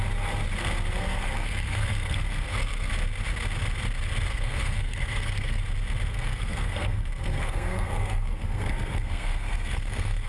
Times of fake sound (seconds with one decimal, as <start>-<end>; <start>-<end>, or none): 1.0-2.9; 4.3-5.6; 6.1-10.3